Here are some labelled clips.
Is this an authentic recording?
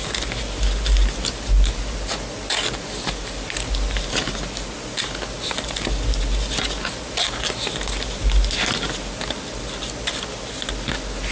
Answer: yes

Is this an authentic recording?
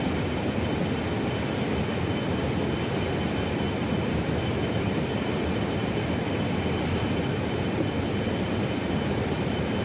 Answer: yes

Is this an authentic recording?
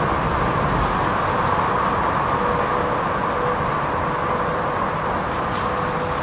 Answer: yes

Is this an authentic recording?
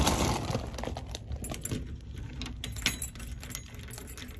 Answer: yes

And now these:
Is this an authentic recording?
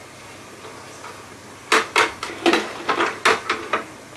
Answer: yes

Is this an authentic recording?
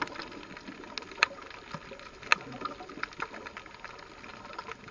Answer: yes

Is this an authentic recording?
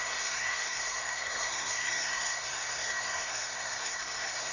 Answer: no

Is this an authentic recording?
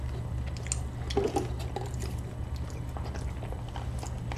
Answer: yes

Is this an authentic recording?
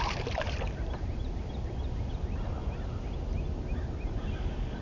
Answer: yes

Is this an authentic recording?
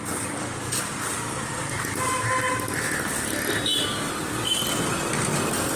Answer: yes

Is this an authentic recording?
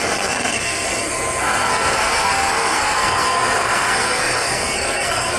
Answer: no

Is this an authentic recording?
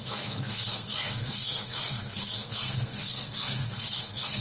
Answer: no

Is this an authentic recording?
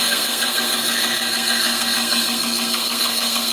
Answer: no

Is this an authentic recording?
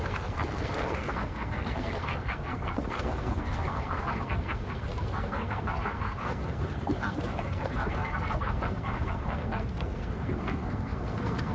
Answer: no